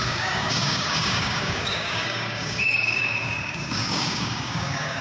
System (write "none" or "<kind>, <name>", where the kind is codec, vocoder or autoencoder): codec, DAC